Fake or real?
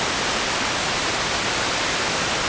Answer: real